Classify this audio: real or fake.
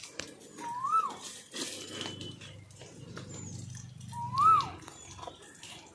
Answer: real